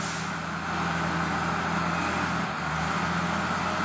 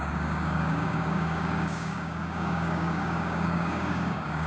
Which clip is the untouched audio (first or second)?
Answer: first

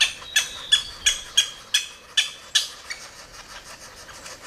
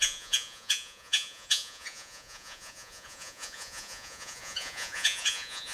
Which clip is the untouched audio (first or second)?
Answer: first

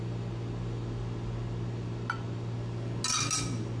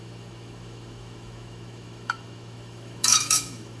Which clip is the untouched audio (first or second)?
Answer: first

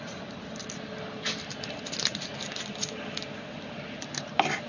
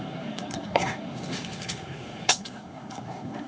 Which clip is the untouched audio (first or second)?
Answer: first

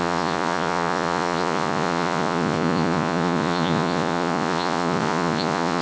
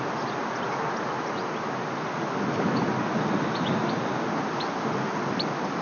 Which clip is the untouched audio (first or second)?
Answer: second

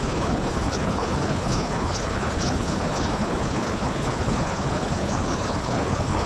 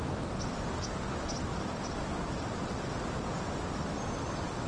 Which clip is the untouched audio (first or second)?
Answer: second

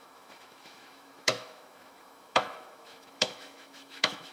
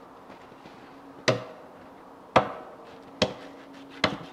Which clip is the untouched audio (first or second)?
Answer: second